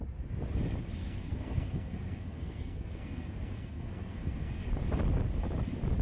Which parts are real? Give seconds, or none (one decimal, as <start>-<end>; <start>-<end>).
0.0-1.0; 4.6-6.0